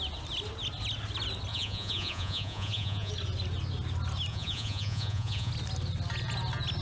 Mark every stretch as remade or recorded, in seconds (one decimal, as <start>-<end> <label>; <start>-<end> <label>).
0.0-1.5 recorded; 1.5-3.1 remade; 3.1-4.3 recorded; 4.3-5.5 remade; 5.5-6.8 recorded